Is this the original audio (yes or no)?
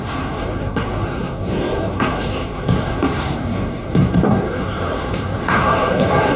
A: no